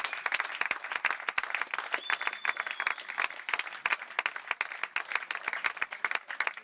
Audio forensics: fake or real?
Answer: real